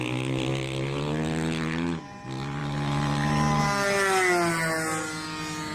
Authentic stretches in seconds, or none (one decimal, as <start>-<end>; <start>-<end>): 0.0-5.7